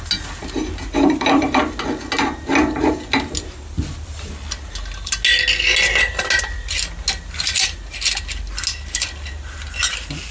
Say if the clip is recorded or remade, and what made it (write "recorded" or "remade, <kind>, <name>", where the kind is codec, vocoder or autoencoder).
recorded